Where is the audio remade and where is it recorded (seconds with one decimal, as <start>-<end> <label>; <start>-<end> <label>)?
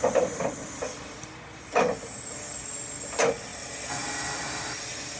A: 0.0-5.2 recorded